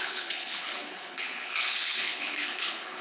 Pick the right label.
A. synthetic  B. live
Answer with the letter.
A